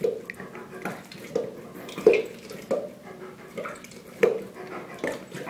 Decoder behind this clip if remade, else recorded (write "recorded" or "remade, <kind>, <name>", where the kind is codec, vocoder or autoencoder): recorded